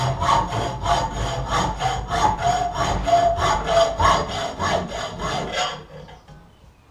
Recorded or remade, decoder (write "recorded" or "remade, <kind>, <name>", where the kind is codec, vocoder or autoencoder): recorded